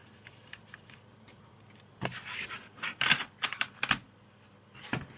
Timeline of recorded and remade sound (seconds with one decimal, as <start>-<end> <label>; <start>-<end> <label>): 0.0-3.1 remade; 3.1-5.2 recorded